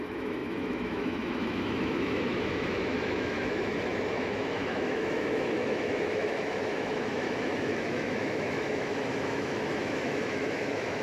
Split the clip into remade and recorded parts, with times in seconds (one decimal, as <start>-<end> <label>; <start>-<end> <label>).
0.0-11.0 remade